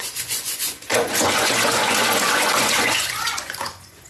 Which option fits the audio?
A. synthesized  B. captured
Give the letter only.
A